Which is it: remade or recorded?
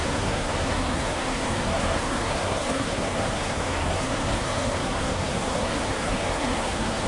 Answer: remade